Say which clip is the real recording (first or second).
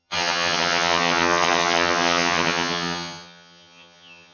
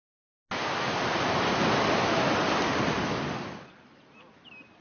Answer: second